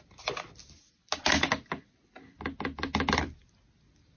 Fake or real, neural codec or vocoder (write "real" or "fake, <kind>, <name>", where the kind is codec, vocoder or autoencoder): real